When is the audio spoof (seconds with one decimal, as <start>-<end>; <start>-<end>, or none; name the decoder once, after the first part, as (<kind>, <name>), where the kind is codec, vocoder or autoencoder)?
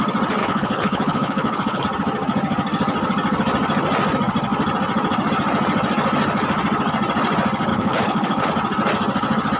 0.4-1.8 (codec, HILCodec); 7.7-8.5